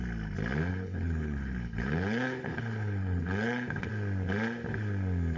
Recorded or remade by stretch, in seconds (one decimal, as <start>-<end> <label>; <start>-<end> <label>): 0.0-0.7 recorded; 0.7-3.9 remade; 3.9-5.4 recorded